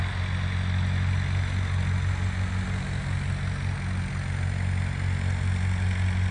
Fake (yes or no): no